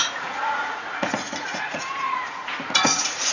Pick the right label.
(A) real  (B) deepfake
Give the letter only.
B